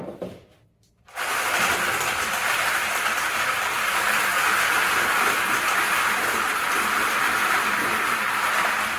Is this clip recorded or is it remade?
remade